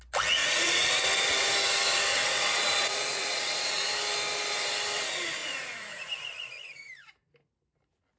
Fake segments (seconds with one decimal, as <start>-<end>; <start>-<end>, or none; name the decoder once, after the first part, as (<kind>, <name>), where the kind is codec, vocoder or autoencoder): 0.4-1.0 (vocoder, Vocos); 2.1-3.9; 5.4-6.9